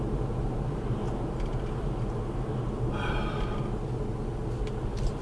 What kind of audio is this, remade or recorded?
recorded